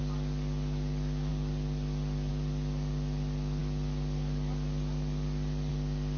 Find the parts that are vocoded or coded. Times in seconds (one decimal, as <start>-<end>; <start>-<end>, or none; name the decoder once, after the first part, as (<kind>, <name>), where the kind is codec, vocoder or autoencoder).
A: none